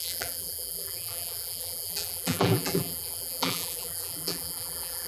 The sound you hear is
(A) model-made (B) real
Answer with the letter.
A